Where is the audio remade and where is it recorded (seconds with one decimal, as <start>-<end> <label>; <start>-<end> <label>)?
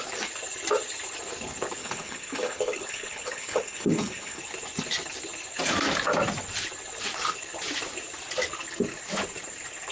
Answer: 0.0-1.8 recorded; 1.8-4.4 remade; 4.4-9.9 recorded